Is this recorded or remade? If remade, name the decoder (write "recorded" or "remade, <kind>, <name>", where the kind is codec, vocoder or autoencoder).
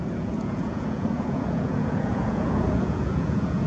remade, vocoder, Vocos